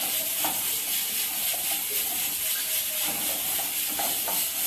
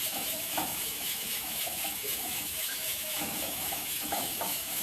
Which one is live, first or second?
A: first